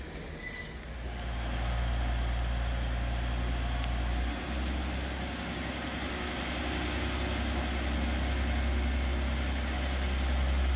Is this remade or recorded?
recorded